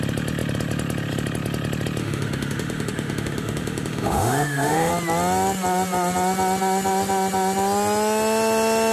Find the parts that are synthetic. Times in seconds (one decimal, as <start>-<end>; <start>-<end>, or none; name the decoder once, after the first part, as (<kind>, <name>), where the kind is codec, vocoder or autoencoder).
2.0-4.9 (autoencoder, DAC-VAE)